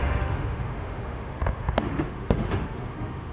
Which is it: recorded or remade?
remade